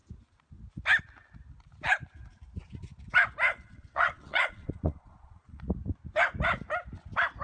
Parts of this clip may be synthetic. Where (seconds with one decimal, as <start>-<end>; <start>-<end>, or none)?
3.5-5.7